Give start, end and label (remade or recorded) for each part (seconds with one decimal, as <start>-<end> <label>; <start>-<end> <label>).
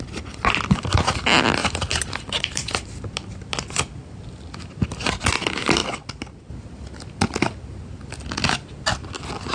0.0-1.6 recorded; 1.6-5.1 remade; 5.1-5.8 recorded; 5.8-6.5 remade; 6.5-9.5 recorded